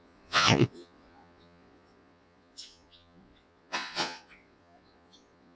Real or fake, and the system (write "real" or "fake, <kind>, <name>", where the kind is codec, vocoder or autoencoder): fake, vocoder, Vocos